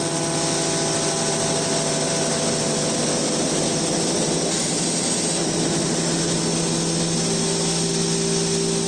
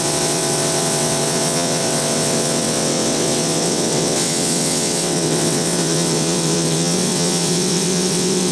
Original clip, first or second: first